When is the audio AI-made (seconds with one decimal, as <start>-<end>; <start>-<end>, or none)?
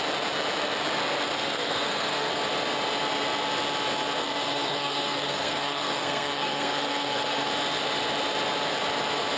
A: 1.4-2.3; 4.2-7.5